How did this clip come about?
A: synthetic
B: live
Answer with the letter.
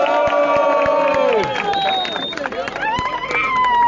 B